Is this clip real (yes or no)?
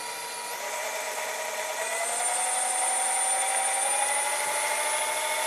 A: yes